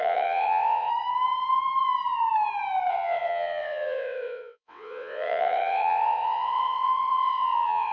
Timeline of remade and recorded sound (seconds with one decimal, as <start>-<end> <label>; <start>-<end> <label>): 0.0-0.9 remade; 0.9-2.9 recorded; 2.9-7.9 remade